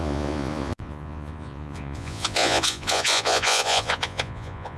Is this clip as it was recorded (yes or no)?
no